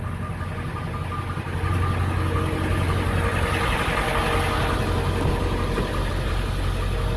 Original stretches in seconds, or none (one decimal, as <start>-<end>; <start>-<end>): 0.0-7.2